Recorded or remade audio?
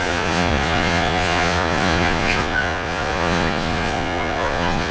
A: remade